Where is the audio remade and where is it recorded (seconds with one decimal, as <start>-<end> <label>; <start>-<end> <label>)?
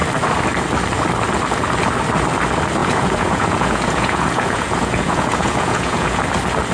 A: 0.0-2.8 recorded; 2.8-6.2 remade; 6.2-6.7 recorded